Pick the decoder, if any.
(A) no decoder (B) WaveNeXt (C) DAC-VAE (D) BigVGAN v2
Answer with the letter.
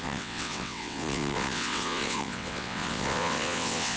B